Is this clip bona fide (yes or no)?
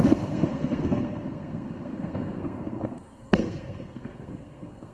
no